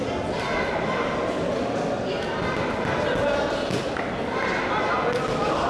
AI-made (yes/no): no